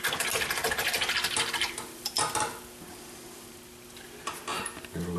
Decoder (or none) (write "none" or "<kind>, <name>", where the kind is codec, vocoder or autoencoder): none